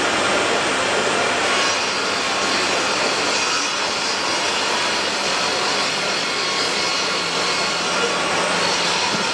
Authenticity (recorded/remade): recorded